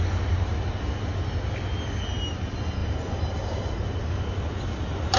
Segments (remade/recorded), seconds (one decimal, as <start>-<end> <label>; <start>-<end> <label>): 0.0-2.8 recorded; 2.8-3.7 remade; 3.7-5.2 recorded